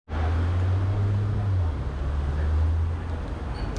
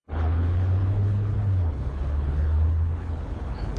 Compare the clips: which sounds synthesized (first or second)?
second